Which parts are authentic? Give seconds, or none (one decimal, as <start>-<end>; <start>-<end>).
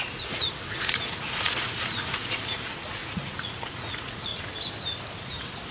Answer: 4.3-5.2